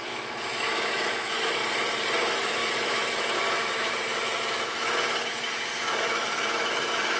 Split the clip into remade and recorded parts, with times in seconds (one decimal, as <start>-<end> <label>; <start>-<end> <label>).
0.0-1.6 remade; 1.6-2.2 recorded; 2.2-7.2 remade